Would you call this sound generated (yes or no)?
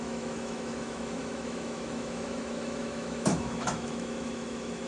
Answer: yes